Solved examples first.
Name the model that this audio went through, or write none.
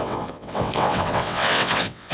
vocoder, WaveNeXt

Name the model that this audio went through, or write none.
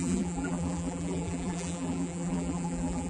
vocoder, BigVGAN v2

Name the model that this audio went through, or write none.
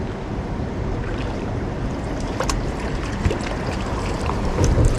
vocoder, BigVGAN v2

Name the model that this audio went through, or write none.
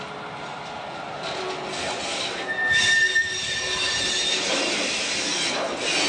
none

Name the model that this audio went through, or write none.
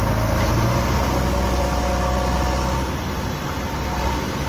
none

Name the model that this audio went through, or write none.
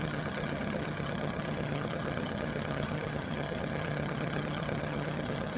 vocoder, HiFi-GAN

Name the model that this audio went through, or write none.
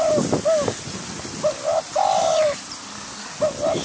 none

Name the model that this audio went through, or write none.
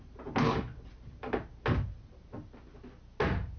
none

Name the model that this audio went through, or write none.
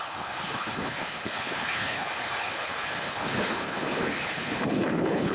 codec, HILCodec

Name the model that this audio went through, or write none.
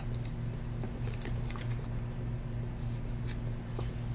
none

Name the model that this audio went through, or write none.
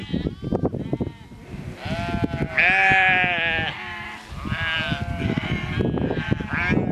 none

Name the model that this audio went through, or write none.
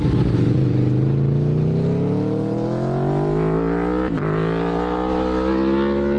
none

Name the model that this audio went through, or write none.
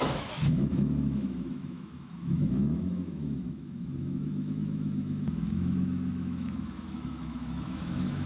autoencoder, DAC-VAE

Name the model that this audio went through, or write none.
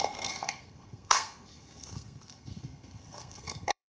codec, SNAC